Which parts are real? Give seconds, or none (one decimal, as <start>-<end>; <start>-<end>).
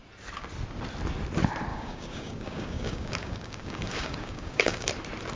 0.0-1.7; 4.9-5.4